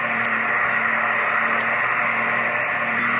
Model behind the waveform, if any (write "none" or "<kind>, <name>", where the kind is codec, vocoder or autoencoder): none